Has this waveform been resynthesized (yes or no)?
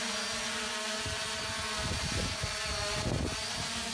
no